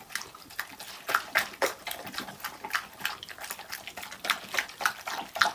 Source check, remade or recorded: recorded